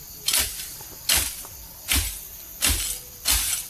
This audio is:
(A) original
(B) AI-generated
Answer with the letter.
A